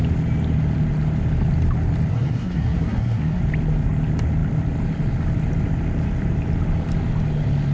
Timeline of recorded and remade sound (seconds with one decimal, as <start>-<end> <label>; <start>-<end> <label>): 0.0-2.1 recorded; 2.1-3.4 remade; 3.4-7.7 recorded